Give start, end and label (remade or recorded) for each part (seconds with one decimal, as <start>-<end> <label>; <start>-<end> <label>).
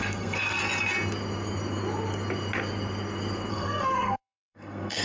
0.0-0.6 remade; 0.6-3.5 recorded; 3.5-5.0 remade